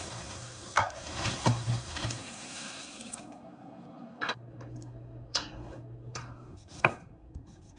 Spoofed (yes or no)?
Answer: yes